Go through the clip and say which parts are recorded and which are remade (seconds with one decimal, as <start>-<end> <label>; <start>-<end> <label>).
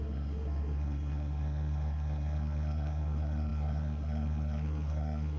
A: 0.0-5.4 remade